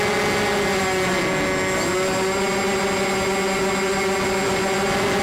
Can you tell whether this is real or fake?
real